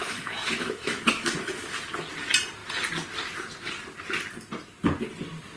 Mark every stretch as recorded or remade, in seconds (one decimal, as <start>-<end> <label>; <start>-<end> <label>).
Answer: 0.0-1.7 remade; 1.7-5.6 recorded